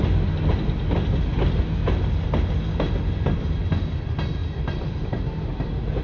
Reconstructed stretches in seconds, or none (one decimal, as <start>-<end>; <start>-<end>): none